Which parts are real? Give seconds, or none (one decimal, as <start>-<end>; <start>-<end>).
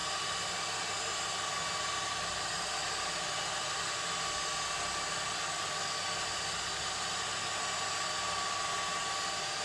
0.0-9.6